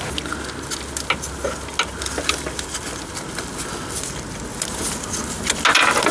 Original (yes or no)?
yes